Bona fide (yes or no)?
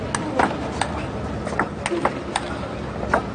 yes